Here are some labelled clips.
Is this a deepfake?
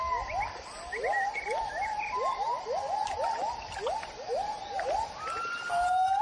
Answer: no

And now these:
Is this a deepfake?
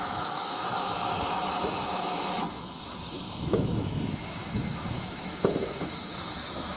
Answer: yes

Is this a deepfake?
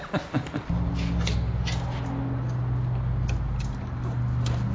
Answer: no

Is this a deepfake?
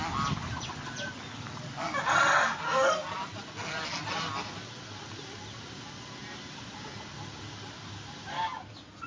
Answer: no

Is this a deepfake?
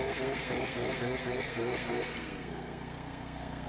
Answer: yes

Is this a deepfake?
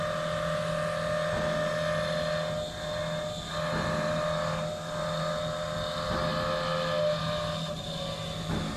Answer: no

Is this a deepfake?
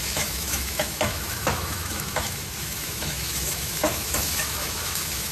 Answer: yes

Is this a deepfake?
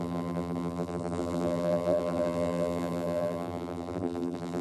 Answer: yes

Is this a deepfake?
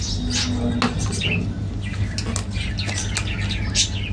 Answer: no